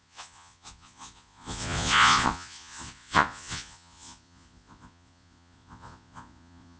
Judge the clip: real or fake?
fake